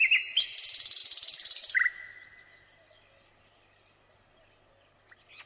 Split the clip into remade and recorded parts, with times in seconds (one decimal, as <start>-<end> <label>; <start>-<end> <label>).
0.0-5.5 recorded